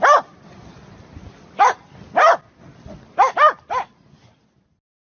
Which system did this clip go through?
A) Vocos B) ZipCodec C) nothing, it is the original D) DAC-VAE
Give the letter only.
C